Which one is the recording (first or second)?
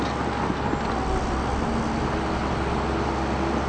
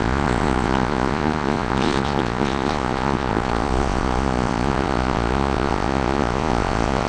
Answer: first